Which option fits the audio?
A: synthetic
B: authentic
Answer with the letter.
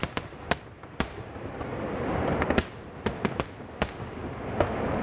B